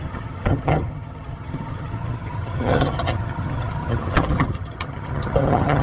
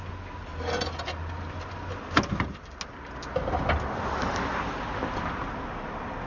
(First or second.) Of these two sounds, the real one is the second